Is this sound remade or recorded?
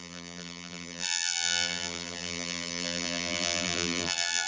remade